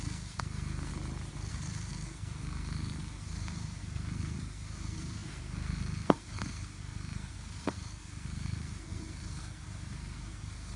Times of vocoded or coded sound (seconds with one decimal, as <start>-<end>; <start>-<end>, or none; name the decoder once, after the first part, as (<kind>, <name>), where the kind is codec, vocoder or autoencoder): 0.0-0.9 (codec, SNAC); 1.5-10.8